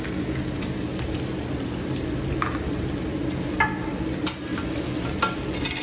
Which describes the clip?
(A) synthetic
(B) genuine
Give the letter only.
B